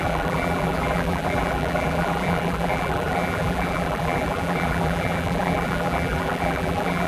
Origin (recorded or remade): remade